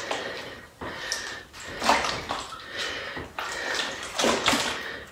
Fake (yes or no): no